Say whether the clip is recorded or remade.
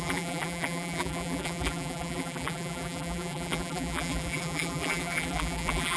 remade